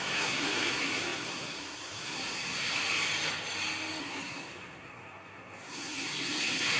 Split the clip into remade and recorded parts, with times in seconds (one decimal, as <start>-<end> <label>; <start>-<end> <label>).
0.0-2.8 remade; 2.8-4.0 recorded; 4.0-6.8 remade